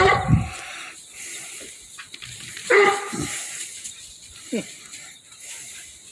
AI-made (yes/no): no